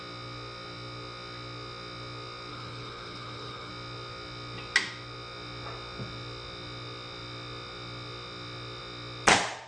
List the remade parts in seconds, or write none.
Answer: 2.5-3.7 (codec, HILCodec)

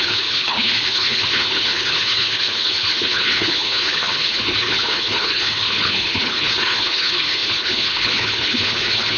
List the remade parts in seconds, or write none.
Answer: 0.0-9.2 (codec, HILCodec)

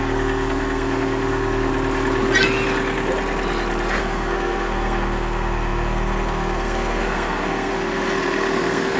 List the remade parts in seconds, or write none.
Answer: 0.0-1.7 (codec, SNAC); 4.0-9.0

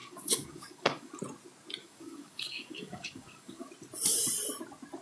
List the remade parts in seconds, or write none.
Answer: 0.0-1.1 (codec, DAC); 1.8-3.7